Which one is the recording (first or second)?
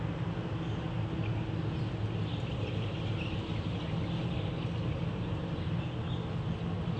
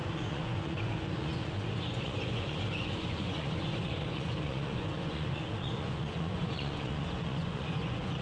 first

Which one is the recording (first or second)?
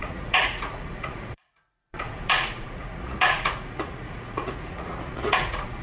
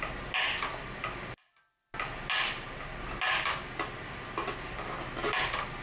second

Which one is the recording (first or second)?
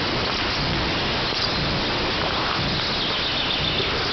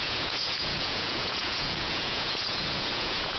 first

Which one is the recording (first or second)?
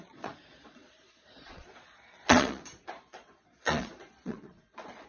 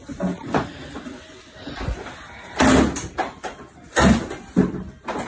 second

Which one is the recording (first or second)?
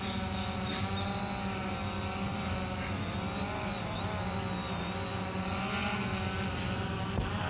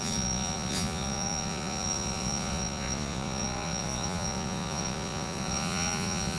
first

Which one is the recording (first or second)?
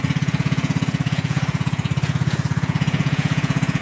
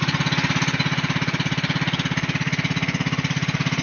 second